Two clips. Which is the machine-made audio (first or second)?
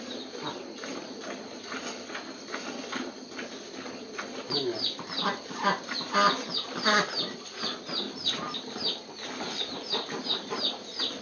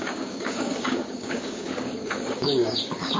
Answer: second